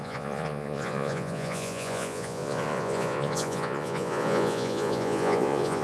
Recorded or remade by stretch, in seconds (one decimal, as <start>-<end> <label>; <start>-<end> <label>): 0.0-5.8 remade